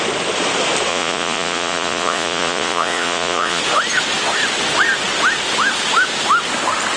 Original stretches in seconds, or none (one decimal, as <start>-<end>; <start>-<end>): 0.0-0.9; 3.6-7.0